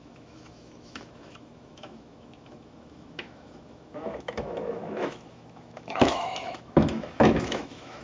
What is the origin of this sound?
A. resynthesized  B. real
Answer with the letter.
A